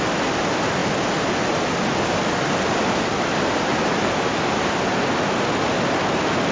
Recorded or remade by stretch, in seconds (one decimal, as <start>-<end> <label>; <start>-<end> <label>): 0.0-3.7 recorded; 3.7-4.8 remade; 4.8-6.5 recorded